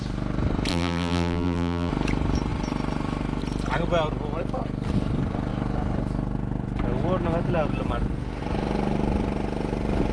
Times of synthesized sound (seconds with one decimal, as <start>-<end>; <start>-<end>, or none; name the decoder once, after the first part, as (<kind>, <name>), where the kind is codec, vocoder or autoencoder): 0.7-1.9 (vocoder, BigVGAN v2)